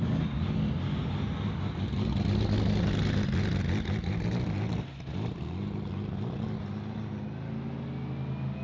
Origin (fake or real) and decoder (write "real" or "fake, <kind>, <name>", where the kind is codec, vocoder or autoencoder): real